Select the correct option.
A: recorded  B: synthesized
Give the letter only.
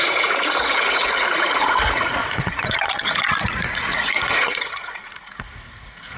B